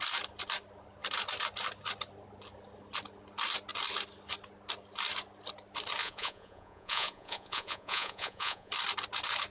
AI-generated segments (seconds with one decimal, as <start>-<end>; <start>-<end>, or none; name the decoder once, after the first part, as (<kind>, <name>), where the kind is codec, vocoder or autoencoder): 6.0-8.7 (vocoder, Vocos)